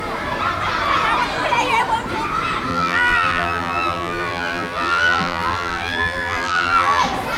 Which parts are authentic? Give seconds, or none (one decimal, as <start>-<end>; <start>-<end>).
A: 0.0-2.7; 7.0-7.4

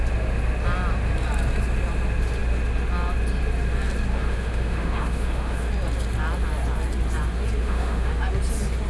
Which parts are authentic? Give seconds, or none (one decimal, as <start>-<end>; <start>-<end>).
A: 0.0-4.1; 5.7-7.6; 8.1-8.9

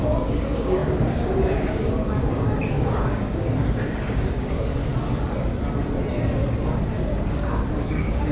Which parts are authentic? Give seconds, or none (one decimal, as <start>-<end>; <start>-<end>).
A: 4.8-7.7

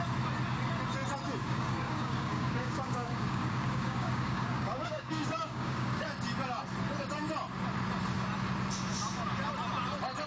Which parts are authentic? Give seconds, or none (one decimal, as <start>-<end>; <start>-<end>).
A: 0.0-1.4; 6.0-10.3